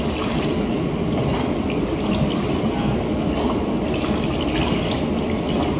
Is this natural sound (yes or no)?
yes